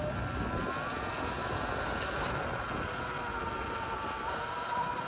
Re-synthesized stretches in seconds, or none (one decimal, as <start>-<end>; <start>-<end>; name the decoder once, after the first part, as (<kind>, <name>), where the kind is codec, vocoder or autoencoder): none

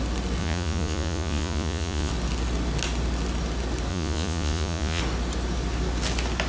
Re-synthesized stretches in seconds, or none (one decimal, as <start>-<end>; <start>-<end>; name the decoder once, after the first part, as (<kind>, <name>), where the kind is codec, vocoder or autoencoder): 0.4-2.1 (vocoder, Vocos); 3.9-5.0

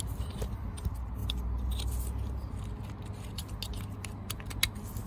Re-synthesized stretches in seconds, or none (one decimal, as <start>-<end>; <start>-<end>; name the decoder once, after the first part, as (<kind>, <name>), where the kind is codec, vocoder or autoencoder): none

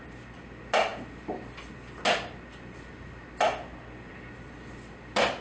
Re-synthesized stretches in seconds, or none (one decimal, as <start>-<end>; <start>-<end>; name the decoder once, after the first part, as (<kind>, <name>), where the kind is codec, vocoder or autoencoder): none

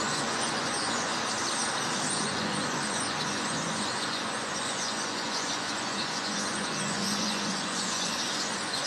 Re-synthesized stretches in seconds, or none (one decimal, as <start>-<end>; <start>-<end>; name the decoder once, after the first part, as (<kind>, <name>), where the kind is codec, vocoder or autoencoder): 0.0-1.1 (vocoder, Vocos); 2.1-8.9

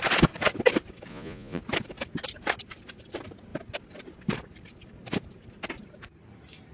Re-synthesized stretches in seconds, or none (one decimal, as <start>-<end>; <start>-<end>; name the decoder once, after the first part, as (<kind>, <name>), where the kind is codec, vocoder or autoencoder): 1.1-1.6 (vocoder, Vocos)

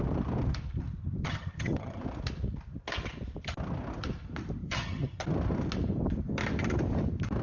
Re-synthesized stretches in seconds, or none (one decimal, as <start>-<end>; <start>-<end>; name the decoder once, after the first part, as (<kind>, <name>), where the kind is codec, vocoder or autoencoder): 1.2-2.0 (vocoder, HiFi-GAN); 4.6-5.2